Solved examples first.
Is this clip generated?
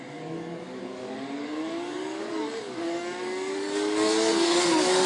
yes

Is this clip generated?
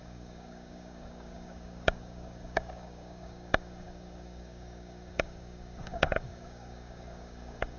yes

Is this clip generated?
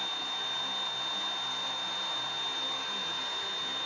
no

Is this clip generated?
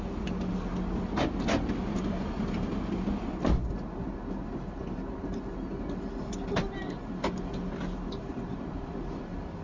no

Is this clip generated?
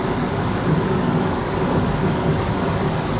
yes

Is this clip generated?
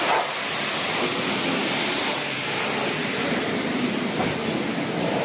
no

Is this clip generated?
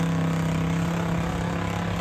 no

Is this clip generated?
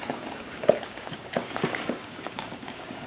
yes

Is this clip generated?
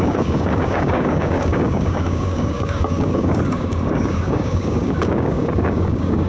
yes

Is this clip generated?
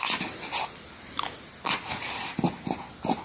no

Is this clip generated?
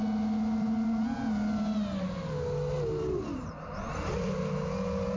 no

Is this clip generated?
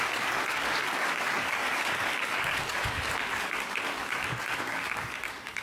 yes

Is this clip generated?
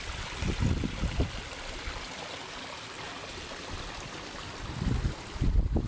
no